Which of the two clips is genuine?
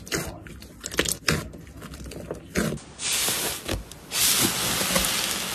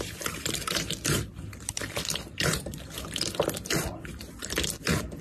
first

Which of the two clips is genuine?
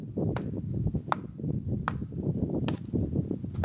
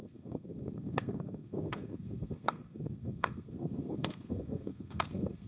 first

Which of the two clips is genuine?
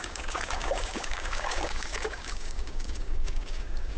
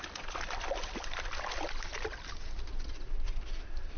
second